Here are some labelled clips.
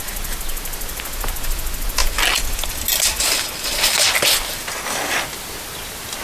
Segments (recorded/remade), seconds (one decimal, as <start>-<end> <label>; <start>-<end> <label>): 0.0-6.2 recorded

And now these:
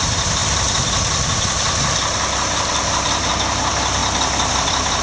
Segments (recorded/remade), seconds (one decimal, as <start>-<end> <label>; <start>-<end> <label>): 0.0-0.4 remade; 0.4-3.3 recorded; 3.3-4.0 remade; 4.0-4.5 recorded; 4.5-5.0 remade

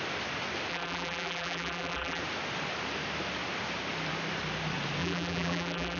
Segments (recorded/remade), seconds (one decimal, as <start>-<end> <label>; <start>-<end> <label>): 0.0-0.7 recorded; 0.7-2.2 remade; 2.2-5.0 recorded; 5.0-6.0 remade

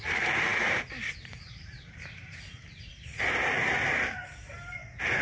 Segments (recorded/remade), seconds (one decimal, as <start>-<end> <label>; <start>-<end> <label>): 0.0-0.5 recorded; 0.5-3.6 remade; 3.6-5.2 recorded

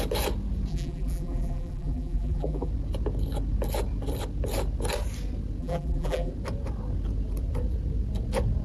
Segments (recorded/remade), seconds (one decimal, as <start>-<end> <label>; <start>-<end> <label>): 0.0-0.7 recorded; 0.7-2.7 remade; 2.7-5.6 recorded; 5.6-6.3 remade; 6.3-8.6 recorded

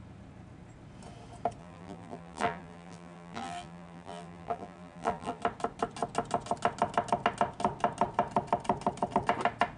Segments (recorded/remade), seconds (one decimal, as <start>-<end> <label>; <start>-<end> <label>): 0.0-1.6 recorded; 1.6-5.4 remade; 5.4-9.8 recorded

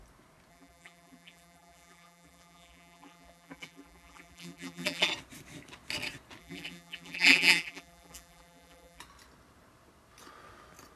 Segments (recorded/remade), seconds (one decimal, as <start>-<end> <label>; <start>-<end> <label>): 0.0-0.5 recorded; 0.5-5.1 remade; 5.1-6.4 recorded; 6.4-9.0 remade; 9.0-11.0 recorded

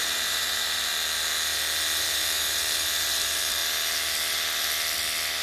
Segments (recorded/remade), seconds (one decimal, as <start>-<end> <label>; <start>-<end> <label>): 0.0-0.9 remade; 0.9-2.0 recorded; 2.0-3.6 remade; 3.6-5.4 recorded